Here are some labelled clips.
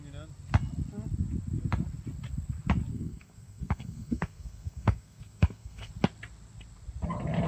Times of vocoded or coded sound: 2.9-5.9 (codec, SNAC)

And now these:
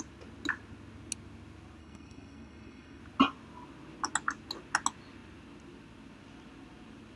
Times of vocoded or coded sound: 1.8-3.0 (codec, SNAC)

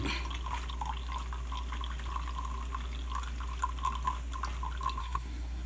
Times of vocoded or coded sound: 5.0-5.7 (codec, SNAC)

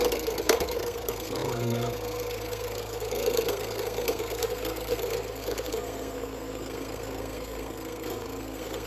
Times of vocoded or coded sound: 0.0-8.9 (codec, SNAC)

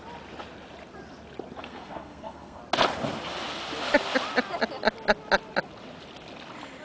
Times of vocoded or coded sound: 1.6-2.6 (codec, SNAC)

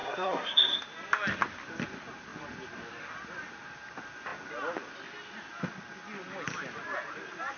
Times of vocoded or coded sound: 0.0-0.8 (codec, SNAC)

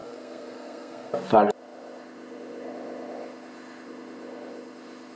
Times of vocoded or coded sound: 0.0-1.1 (codec, SNAC)

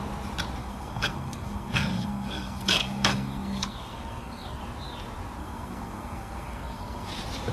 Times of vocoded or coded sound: 0.6-4.6 (codec, SNAC); 5.4-7.1